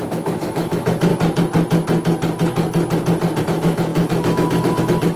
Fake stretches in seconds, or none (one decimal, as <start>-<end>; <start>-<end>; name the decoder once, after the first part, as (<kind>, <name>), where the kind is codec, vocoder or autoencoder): 0.0-1.1 (autoencoder, DAC-VAE); 3.4-5.2